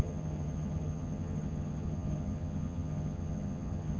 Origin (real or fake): fake